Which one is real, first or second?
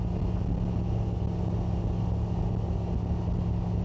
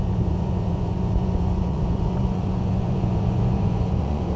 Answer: first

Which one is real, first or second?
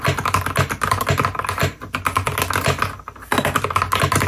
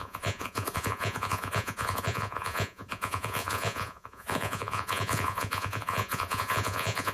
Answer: first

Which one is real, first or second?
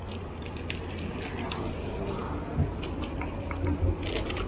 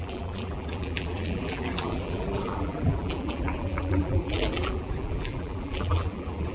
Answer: first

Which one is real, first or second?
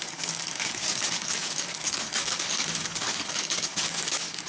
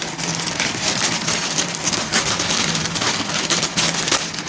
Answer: second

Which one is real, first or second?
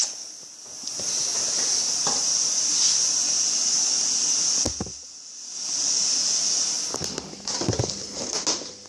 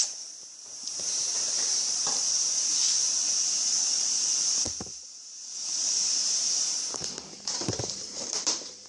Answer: first